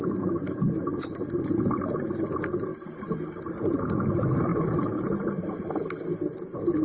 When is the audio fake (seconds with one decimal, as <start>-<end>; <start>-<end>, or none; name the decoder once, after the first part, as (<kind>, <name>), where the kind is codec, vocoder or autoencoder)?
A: 2.7-3.5 (vocoder, BigVGAN v2); 4.5-5.6